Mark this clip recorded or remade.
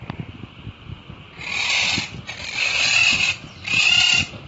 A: recorded